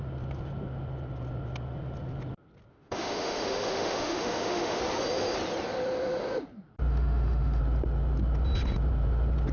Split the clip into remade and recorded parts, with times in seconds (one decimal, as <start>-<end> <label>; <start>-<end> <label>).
0.0-2.7 recorded; 2.7-4.8 remade; 4.8-6.9 recorded; 6.9-7.6 remade; 7.6-9.5 recorded

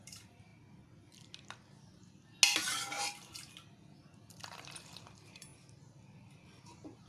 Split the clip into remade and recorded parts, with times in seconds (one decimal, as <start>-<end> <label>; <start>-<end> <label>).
0.0-0.5 remade; 0.5-4.3 recorded; 4.3-5.5 remade; 5.5-6.6 recorded; 6.6-7.1 remade

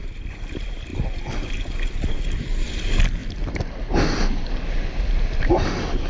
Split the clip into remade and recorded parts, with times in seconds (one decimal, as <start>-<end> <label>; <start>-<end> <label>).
0.0-6.1 recorded

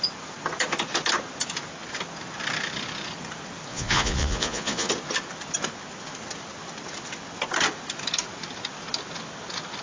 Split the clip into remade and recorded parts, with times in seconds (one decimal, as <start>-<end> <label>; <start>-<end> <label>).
0.0-3.7 recorded; 3.7-4.9 remade; 4.9-9.8 recorded

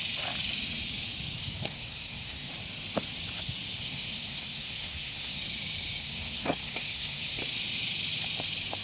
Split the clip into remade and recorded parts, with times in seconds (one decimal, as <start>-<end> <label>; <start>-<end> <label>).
0.0-1.4 recorded; 1.4-2.5 remade; 2.5-3.8 recorded; 3.8-5.4 remade; 5.4-6.0 recorded; 6.0-7.4 remade; 7.4-8.8 recorded

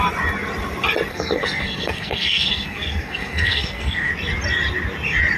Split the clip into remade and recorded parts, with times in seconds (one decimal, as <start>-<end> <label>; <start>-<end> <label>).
0.0-1.1 recorded; 1.1-4.1 remade; 4.1-5.4 recorded

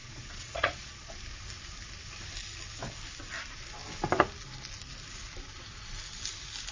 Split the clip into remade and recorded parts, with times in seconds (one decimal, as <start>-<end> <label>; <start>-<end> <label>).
0.0-1.1 remade; 1.1-6.7 recorded

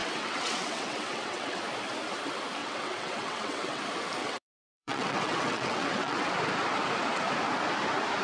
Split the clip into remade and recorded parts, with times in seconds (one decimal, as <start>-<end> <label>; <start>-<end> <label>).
0.0-1.6 remade; 1.6-2.6 recorded; 2.6-3.8 remade; 3.8-4.2 recorded; 4.2-6.3 remade; 6.3-8.2 recorded